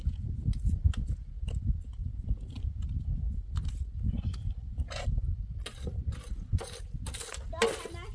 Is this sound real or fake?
real